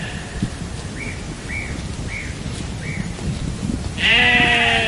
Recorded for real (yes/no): yes